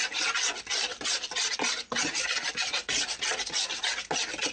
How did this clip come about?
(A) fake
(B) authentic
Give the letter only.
B